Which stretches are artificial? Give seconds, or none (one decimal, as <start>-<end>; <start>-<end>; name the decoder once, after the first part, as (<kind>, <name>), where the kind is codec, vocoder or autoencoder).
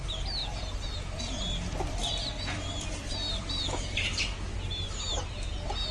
none